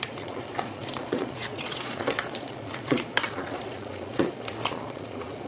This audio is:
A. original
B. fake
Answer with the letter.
B